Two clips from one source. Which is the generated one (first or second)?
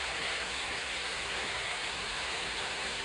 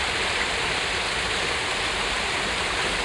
first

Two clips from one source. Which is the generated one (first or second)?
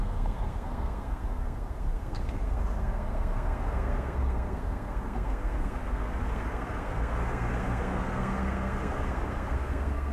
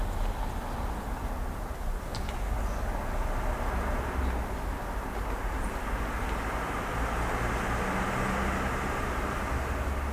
first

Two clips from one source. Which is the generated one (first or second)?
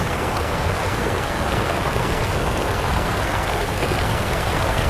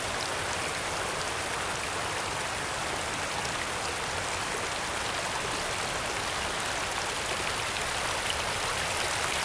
first